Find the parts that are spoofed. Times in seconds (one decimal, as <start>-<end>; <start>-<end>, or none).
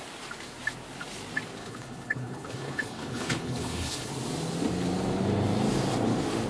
1.6-4.1